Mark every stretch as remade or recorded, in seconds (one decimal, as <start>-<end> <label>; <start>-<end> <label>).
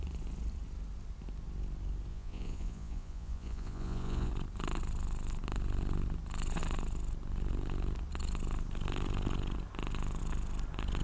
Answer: 0.0-2.1 recorded; 2.1-4.3 remade; 4.3-11.0 recorded